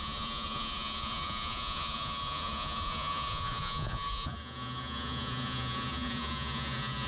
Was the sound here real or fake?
fake